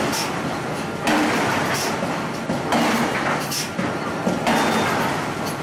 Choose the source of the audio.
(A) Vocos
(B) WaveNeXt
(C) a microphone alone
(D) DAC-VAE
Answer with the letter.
C